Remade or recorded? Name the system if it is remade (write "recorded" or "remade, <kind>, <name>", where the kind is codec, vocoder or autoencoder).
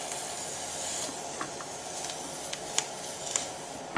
recorded